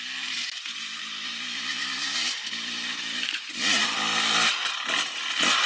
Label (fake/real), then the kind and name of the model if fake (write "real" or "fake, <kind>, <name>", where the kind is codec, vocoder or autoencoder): real